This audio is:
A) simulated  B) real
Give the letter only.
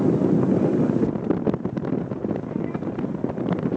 B